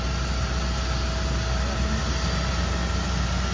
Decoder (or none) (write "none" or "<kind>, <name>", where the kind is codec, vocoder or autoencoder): none